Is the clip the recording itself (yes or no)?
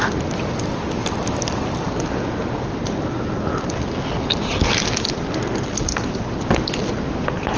yes